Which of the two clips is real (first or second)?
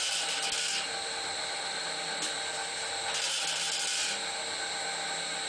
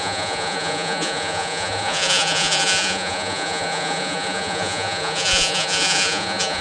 first